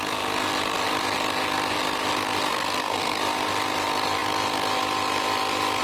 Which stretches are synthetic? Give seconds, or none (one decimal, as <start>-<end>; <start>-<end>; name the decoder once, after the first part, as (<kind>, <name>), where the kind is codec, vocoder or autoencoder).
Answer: 2.5-3.2 (codec, SNAC)